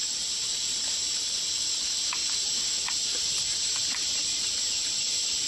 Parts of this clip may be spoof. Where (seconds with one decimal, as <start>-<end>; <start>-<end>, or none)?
0.0-2.2; 3.1-5.5